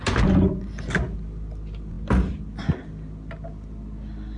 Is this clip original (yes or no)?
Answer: yes